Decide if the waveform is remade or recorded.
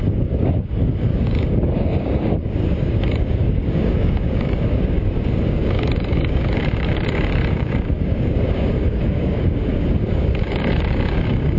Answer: remade